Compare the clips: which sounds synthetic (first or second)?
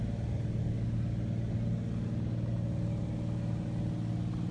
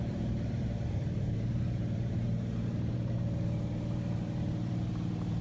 second